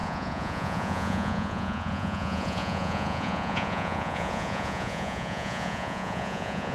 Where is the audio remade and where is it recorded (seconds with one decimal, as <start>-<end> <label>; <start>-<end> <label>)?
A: 0.0-6.7 remade